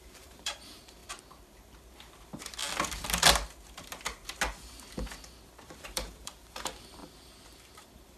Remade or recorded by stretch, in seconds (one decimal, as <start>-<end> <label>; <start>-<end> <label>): 0.0-1.0 remade; 1.0-2.2 recorded; 2.2-2.6 remade; 2.6-5.8 recorded; 5.8-8.2 remade